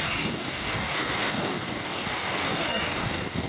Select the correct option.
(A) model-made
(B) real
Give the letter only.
A